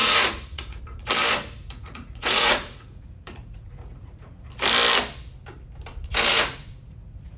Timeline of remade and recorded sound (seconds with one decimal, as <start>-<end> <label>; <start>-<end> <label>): 0.0-0.8 remade; 0.8-1.6 recorded; 1.6-4.5 remade; 4.5-6.3 recorded; 6.3-7.4 remade